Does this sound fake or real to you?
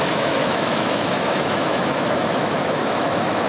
fake